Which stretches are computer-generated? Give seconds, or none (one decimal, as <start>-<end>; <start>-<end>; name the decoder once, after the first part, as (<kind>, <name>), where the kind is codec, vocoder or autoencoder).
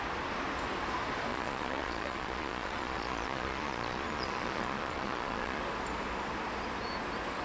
1.3-5.6 (vocoder, Vocos)